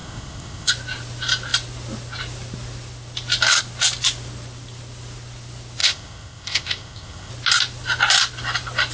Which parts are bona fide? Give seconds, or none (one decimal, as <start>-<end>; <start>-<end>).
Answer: 0.7-5.8; 7.3-8.9